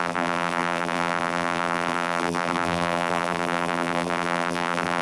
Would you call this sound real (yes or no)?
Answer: no